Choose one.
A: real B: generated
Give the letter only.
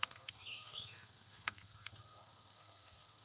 B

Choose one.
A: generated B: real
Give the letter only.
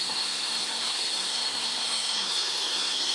A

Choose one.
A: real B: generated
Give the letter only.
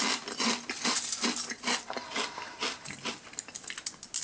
A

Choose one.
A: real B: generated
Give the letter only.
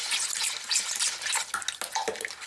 A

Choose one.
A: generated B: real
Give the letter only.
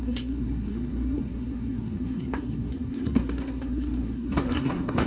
A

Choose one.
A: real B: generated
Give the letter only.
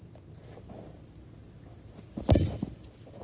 A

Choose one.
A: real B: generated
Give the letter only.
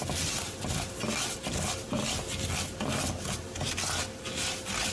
A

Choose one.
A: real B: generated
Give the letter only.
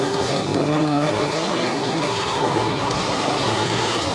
B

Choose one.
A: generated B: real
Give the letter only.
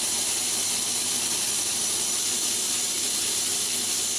B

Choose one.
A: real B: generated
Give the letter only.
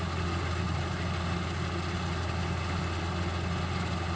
A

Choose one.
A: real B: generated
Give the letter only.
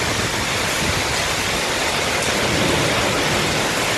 A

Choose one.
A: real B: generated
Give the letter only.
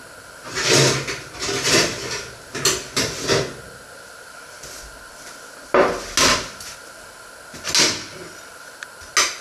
A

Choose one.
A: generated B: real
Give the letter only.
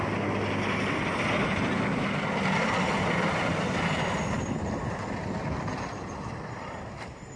B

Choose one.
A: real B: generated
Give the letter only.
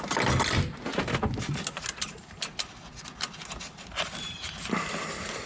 A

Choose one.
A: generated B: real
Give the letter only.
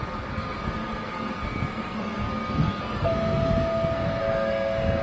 A